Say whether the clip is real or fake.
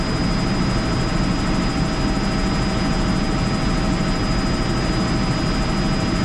real